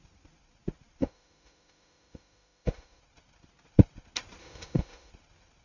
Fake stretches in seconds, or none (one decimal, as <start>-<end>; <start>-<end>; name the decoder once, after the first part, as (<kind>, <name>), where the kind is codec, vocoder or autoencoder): 1.0-3.0 (autoencoder, DAC-VAE); 4.4-5.1